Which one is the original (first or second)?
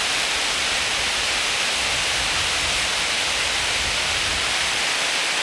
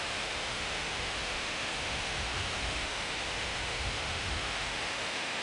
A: first